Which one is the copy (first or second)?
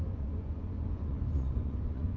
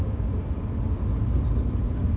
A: first